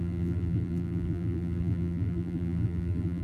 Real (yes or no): no